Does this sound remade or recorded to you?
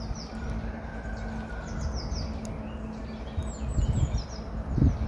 recorded